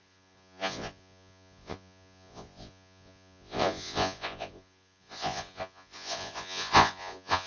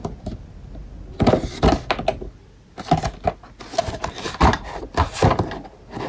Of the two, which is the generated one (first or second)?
first